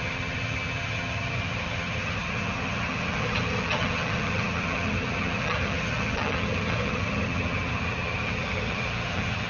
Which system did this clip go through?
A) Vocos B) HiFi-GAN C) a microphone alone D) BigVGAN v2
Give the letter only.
B